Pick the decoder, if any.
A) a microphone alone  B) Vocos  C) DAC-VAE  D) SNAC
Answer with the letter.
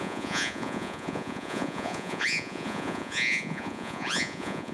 B